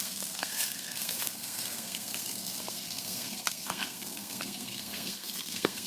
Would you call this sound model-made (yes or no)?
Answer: yes